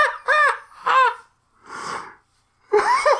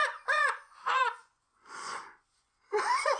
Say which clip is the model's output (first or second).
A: second